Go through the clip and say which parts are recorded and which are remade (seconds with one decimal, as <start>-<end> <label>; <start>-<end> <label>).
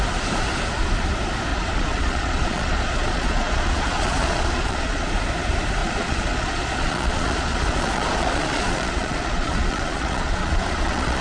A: 0.0-1.5 recorded; 1.5-5.1 remade; 5.1-5.8 recorded; 5.8-11.2 remade